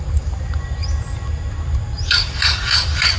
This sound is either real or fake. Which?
real